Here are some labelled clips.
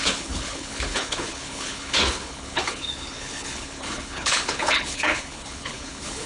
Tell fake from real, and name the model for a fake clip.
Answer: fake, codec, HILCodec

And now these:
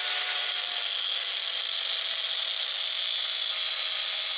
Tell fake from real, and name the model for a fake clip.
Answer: real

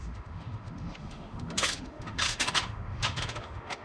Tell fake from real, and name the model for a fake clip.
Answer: fake, autoencoder, DAC-VAE